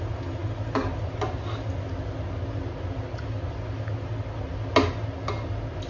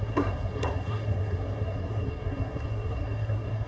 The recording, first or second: first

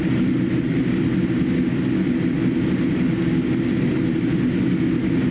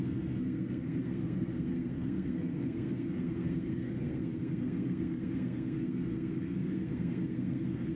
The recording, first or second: first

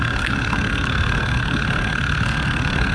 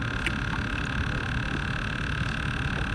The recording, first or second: second